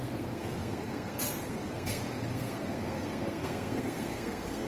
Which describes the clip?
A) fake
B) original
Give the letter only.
A